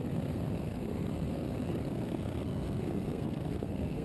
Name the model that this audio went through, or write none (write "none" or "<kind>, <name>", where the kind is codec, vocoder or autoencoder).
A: codec, SNAC